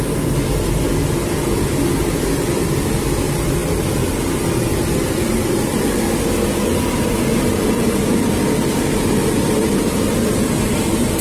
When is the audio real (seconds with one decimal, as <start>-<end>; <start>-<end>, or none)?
0.0-11.2